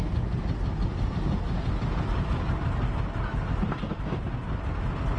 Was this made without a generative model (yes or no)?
yes